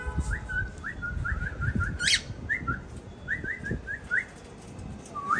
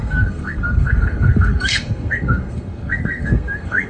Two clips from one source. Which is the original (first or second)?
first